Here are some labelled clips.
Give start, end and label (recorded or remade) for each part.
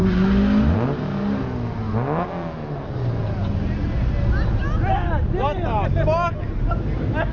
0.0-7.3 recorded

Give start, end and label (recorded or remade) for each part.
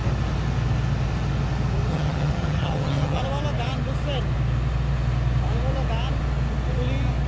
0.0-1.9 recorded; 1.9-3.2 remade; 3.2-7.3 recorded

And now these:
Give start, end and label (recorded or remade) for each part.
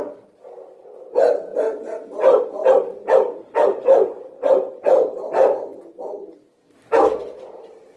0.0-8.0 recorded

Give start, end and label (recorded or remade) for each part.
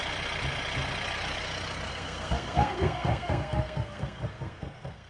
0.0-1.9 recorded; 1.9-5.1 remade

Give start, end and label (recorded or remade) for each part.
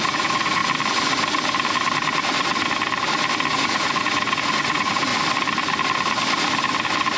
0.0-0.6 remade; 0.6-3.5 recorded; 3.5-5.1 remade; 5.1-7.2 recorded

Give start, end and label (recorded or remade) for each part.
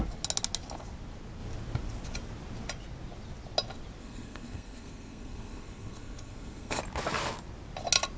0.0-4.0 recorded; 4.0-6.8 remade; 6.8-8.2 recorded